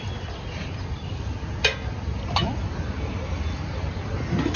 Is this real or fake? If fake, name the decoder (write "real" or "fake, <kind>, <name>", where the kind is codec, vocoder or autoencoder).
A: real